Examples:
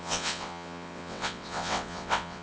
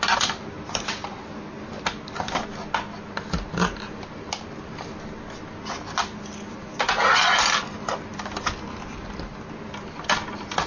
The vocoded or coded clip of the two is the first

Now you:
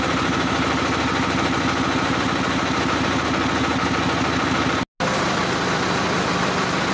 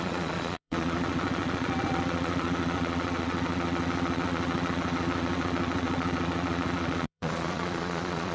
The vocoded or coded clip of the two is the second